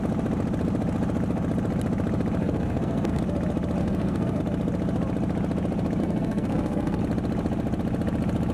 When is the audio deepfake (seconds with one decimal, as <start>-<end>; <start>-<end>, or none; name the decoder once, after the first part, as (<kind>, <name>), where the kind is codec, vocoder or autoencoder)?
2.4-3.2 (codec, SNAC); 3.8-4.4; 6.0-7.0